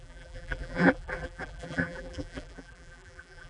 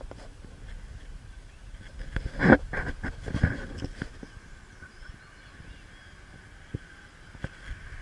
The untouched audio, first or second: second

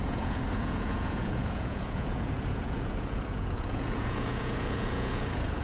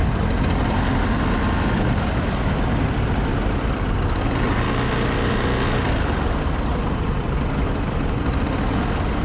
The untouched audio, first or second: second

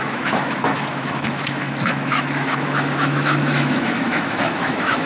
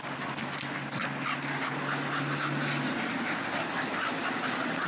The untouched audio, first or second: second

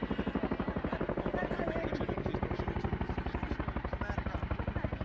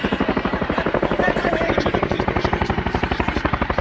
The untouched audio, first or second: first